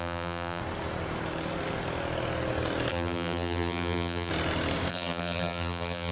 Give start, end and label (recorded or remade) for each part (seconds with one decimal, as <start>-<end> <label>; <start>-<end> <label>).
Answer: 0.0-0.6 remade; 0.6-2.9 recorded; 2.9-4.3 remade; 4.3-4.9 recorded; 4.9-6.1 remade